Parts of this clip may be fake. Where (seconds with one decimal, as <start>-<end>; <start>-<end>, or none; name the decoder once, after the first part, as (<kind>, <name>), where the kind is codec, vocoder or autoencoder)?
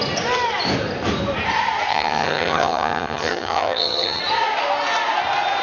1.9-4.2 (vocoder, HiFi-GAN)